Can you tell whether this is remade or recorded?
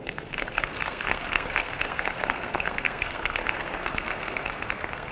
remade